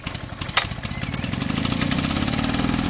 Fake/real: real